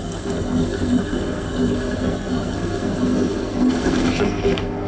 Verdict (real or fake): fake